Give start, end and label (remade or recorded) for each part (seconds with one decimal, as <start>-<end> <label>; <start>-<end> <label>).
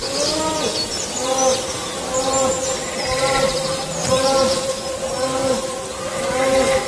0.0-6.9 recorded